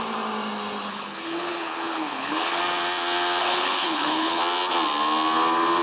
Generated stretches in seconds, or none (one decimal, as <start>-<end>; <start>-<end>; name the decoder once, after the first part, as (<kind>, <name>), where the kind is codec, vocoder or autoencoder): 0.9-2.6 (codec, HILCodec); 3.4-4.4